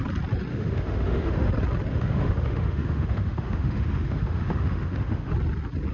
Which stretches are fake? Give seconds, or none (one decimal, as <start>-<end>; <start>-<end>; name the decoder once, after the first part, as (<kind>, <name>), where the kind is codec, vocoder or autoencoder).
0.5-1.5 (autoencoder, DAC-VAE); 1.9-5.3